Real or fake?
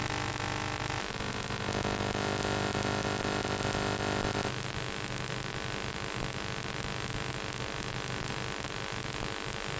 real